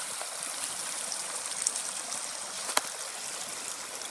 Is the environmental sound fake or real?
real